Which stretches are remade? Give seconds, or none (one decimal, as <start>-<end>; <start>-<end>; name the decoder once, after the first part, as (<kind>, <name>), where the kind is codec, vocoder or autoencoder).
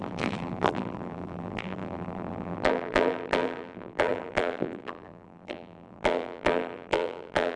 0.0-7.6 (vocoder, BigVGAN v2)